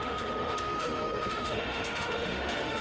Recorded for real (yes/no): no